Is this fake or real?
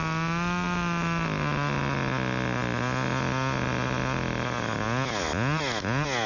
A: real